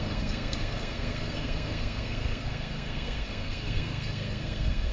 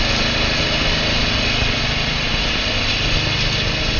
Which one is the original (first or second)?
second